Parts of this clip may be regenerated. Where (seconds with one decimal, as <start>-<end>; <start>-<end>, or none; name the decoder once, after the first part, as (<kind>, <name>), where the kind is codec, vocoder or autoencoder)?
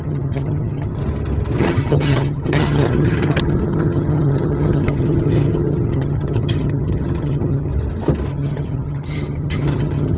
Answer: 0.0-1.0 (vocoder, HiFi-GAN); 1.6-7.7; 8.3-10.2